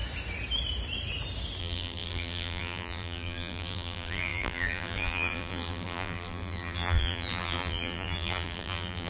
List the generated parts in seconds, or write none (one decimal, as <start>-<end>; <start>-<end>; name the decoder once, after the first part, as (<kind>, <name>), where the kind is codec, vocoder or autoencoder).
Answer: 1.6-9.1 (vocoder, BigVGAN v2)